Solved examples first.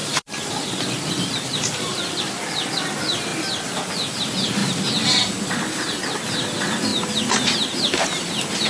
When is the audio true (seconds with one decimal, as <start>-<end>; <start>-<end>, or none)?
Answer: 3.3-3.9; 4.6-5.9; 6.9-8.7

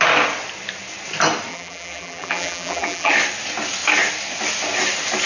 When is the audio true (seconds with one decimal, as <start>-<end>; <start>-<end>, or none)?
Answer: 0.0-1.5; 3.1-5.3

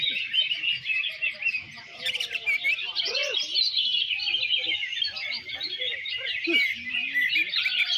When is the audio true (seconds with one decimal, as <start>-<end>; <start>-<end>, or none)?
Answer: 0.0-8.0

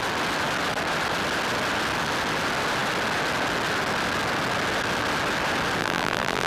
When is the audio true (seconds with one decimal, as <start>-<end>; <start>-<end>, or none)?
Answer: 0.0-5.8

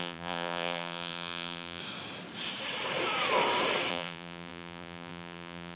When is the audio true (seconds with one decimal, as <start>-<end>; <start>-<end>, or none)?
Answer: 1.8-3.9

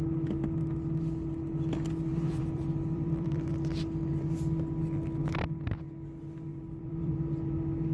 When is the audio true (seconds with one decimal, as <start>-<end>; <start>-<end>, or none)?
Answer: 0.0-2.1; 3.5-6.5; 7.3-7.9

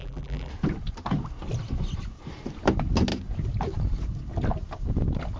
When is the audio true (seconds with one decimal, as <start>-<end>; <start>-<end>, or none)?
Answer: 0.5-5.4